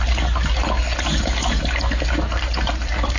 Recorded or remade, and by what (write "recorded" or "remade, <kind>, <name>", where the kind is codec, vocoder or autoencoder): recorded